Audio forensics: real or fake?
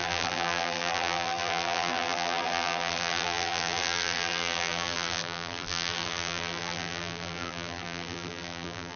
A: fake